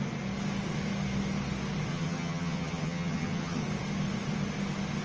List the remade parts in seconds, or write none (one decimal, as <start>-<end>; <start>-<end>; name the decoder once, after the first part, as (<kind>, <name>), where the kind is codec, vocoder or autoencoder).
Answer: 1.9-3.6 (vocoder, HiFi-GAN)